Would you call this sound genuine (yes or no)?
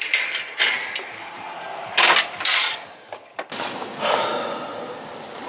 yes